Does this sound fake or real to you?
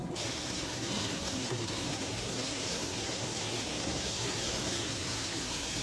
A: fake